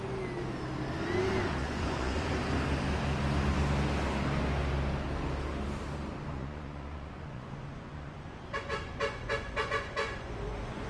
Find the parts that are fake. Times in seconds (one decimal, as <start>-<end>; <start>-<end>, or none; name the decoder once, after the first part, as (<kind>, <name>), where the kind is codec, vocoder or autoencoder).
1.6-2.3 (vocoder, Vocos); 6.3-10.9